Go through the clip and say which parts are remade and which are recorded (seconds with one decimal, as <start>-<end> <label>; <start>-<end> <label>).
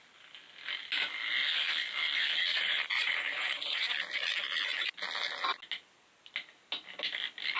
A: 0.0-2.5 recorded; 2.5-3.9 remade; 3.9-7.6 recorded